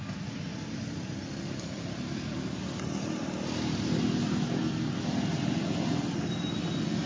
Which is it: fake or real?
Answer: real